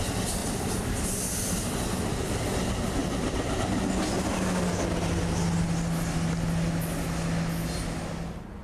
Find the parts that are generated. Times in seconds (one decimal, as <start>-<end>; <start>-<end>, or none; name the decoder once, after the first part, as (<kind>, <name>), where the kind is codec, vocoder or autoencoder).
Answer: 0.4-1.5 (vocoder, BigVGAN v2); 3.0-3.6

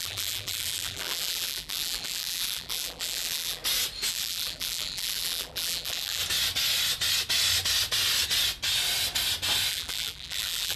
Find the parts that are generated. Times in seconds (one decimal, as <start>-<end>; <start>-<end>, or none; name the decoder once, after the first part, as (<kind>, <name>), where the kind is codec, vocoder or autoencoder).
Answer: 0.0-3.6 (vocoder, BigVGAN v2); 4.1-6.2; 9.7-10.8